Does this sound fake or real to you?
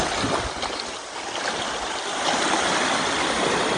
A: real